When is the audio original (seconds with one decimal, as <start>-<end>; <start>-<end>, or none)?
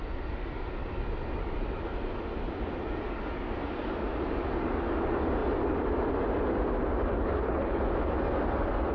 0.0-7.1; 7.8-8.9